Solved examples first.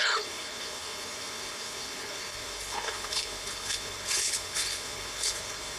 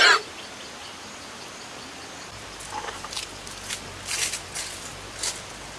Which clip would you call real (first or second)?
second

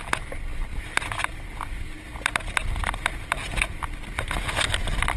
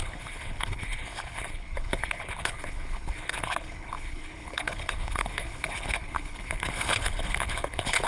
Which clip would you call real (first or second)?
first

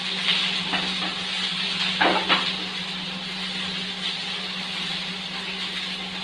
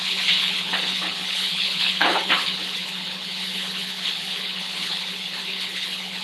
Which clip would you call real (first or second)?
first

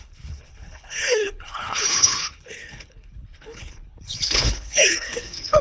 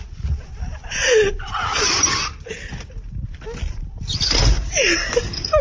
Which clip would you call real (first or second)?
second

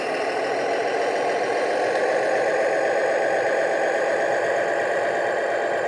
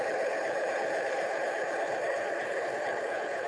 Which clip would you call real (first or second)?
first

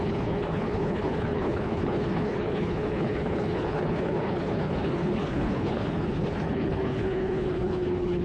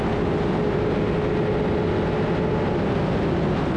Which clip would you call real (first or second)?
second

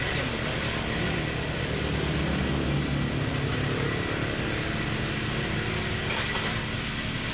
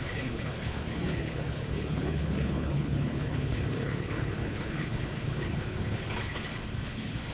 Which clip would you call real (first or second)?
first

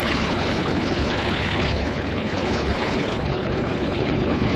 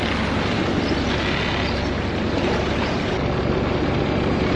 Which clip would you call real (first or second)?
second